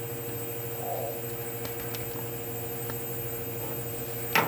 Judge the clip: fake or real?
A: real